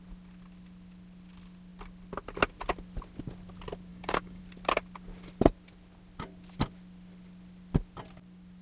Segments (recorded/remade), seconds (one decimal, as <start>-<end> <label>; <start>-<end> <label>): 0.0-3.9 recorded; 3.9-4.4 remade; 4.4-8.6 recorded